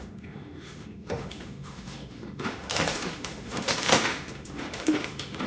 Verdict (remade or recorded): remade